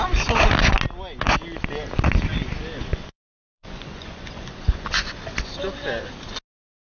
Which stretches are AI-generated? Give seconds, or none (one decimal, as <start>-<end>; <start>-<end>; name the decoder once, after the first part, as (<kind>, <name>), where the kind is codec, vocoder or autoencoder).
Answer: 2.9-5.5 (vocoder, Vocos)